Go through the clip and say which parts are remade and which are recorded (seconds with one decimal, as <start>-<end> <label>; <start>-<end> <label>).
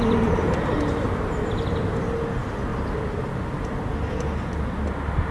0.0-2.7 recorded; 2.7-4.1 remade; 4.1-5.3 recorded